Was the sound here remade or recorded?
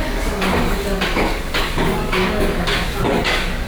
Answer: remade